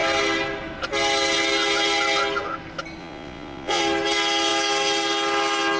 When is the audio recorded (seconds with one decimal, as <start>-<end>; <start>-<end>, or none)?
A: 0.0-3.0; 3.8-5.8